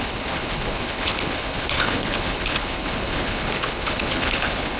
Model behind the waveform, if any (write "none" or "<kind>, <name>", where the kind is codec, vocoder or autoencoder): codec, HILCodec